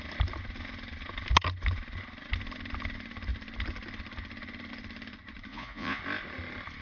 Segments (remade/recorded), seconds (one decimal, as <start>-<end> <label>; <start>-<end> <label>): 0.0-5.5 recorded; 5.5-6.0 remade; 6.0-6.8 recorded